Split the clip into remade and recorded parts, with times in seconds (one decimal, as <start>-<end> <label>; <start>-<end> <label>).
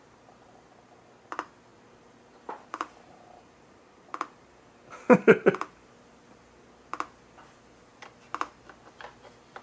0.0-1.7 recorded; 1.7-5.9 remade; 5.9-9.6 recorded